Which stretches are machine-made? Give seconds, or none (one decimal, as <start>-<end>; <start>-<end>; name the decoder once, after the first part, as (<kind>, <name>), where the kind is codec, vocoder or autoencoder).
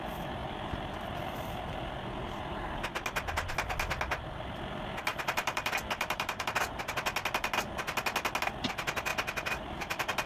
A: 0.4-1.6 (vocoder, BigVGAN v2); 5.1-6.9; 9.1-10.3